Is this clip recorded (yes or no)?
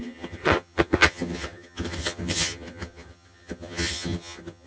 no